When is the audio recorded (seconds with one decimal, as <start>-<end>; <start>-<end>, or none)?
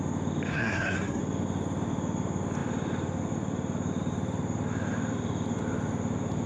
0.0-0.5; 1.2-6.5